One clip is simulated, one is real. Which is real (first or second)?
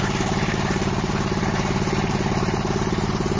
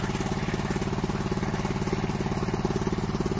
second